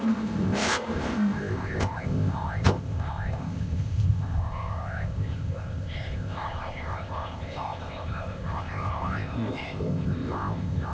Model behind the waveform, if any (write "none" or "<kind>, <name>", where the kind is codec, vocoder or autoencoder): codec, ZipCodec